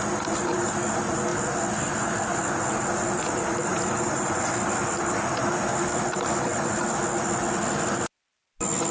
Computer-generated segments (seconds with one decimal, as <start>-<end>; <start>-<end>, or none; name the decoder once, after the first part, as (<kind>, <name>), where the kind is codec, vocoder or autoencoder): 3.7-4.4 (vocoder, BigVGAN v2)